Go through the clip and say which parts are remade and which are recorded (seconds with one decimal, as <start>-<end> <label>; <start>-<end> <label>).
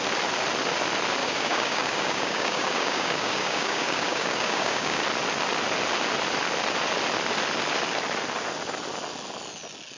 0.0-1.2 recorded; 1.2-5.0 remade; 5.0-10.0 recorded